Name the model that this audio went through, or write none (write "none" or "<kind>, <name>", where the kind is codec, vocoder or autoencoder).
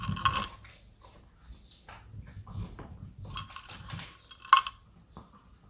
none